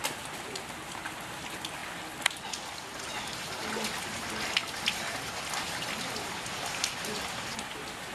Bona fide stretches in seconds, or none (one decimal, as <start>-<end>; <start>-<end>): 0.0-8.1